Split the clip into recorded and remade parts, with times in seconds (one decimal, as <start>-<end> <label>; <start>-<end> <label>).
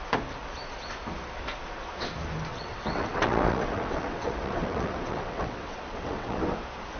0.0-2.5 recorded; 2.5-6.4 remade; 6.4-7.0 recorded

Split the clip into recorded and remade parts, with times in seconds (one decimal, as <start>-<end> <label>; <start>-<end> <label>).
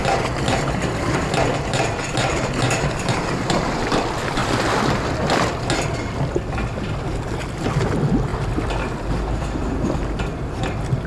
0.0-4.4 remade; 4.4-6.5 recorded; 6.5-8.3 remade; 8.3-9.1 recorded; 9.1-11.1 remade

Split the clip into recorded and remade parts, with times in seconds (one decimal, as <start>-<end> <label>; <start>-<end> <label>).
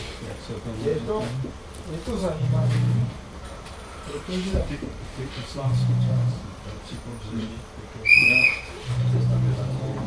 0.0-0.9 recorded; 0.9-1.5 remade; 1.5-2.2 recorded; 2.2-7.5 remade; 7.5-10.1 recorded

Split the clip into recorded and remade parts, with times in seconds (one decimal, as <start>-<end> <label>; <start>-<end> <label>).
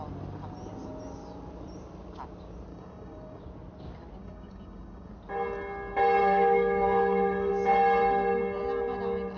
0.0-2.7 recorded; 2.7-3.4 remade; 3.4-4.2 recorded; 4.2-5.1 remade; 5.1-6.2 recorded; 6.2-7.5 remade; 7.5-9.4 recorded